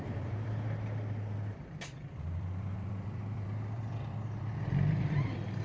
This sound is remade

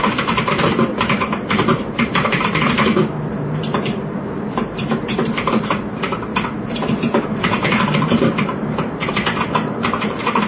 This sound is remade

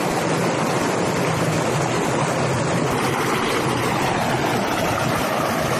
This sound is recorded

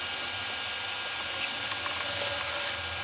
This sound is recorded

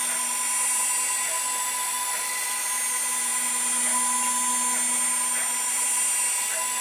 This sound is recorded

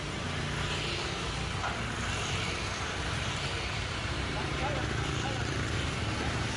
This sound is recorded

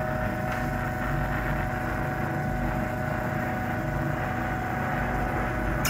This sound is recorded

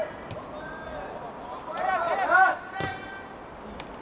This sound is recorded